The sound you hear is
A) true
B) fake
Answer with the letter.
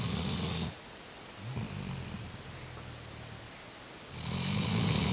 A